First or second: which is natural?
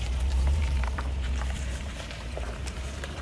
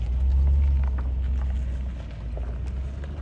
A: second